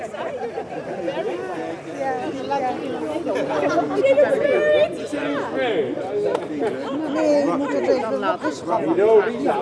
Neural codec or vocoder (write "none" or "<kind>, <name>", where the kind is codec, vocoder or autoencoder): none